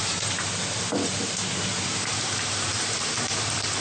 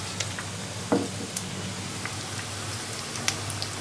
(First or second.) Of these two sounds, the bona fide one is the second